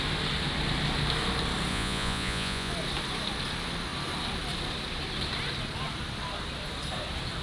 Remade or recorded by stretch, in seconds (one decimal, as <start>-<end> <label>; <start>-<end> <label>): 0.0-1.7 recorded; 1.7-2.7 remade; 2.7-7.4 recorded